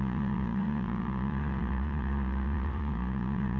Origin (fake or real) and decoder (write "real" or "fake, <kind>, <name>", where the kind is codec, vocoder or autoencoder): fake, vocoder, Vocos